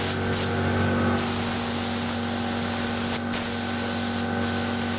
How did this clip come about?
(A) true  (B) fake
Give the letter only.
A